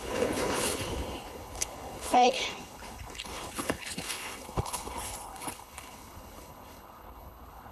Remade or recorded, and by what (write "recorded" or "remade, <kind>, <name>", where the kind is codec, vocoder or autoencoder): remade, codec, HILCodec